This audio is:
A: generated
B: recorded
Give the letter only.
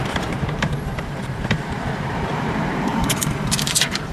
A